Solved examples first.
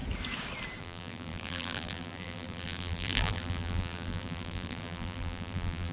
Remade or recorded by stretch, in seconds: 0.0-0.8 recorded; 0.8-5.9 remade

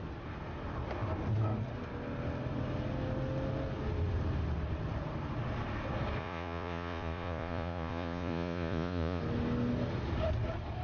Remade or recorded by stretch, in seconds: 0.0-6.2 recorded; 6.2-9.2 remade; 9.2-10.8 recorded

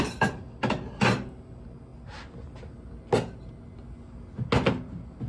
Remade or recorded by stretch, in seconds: 0.0-5.3 recorded

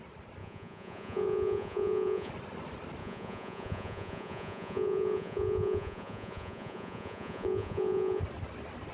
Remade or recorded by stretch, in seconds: 0.0-0.4 recorded; 0.4-2.3 remade; 2.3-3.0 recorded; 3.0-8.2 remade; 8.2-8.9 recorded

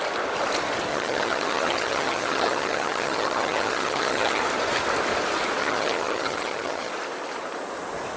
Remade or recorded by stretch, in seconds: 0.0-0.9 recorded; 0.9-4.4 remade; 4.4-5.6 recorded; 5.6-6.9 remade; 6.9-8.2 recorded

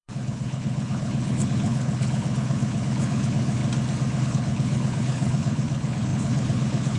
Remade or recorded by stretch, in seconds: 0.0-3.6 remade; 3.6-4.2 recorded; 4.2-7.0 remade

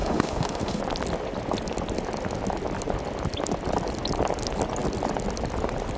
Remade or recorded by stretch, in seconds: 0.0-0.8 remade; 0.8-6.0 recorded